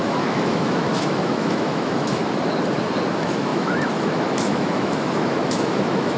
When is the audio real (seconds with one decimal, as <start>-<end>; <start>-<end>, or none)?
2.2-3.1